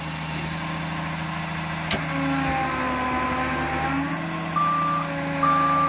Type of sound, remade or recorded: recorded